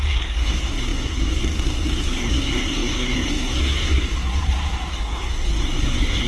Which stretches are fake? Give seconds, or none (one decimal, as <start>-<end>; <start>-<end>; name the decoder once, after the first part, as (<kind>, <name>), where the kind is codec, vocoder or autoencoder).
0.0-4.0 (codec, SNAC); 4.9-6.3